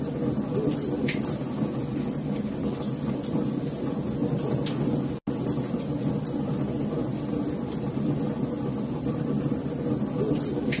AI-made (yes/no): no